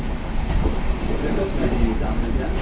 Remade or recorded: recorded